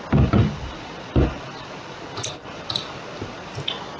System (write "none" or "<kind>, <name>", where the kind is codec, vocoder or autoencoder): none